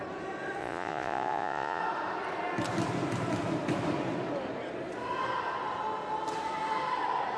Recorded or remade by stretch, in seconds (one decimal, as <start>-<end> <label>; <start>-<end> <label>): 0.0-0.6 recorded; 0.6-1.8 remade; 1.8-7.4 recorded